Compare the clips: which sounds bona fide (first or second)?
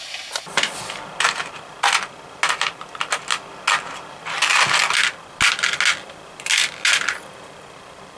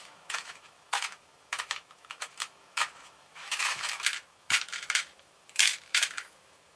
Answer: first